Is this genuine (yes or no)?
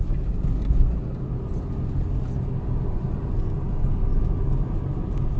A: yes